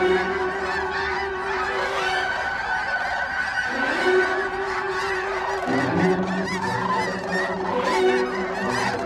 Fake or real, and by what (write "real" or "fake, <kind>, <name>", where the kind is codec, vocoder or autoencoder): real